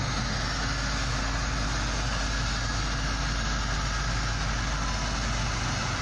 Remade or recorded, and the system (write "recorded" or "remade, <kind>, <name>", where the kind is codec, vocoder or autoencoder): recorded